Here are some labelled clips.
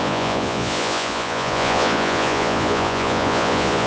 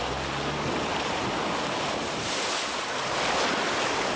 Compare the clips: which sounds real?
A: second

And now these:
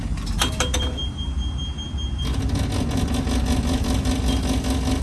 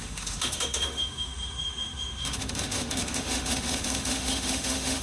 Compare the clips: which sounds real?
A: first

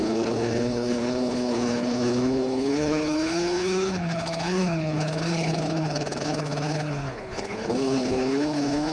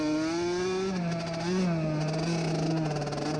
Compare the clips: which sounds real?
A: second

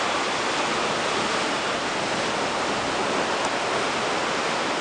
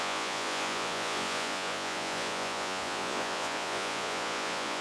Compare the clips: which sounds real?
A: first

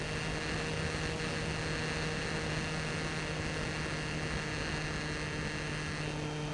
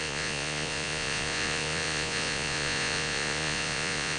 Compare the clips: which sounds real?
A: first